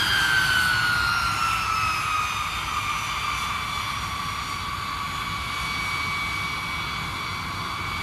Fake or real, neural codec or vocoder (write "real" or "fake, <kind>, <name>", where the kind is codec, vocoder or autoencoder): real